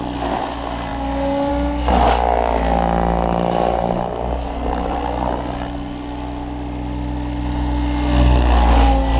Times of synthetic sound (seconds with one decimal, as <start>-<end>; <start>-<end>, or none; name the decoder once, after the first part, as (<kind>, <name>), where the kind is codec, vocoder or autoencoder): none